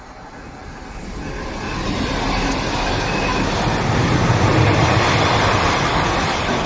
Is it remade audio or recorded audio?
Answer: recorded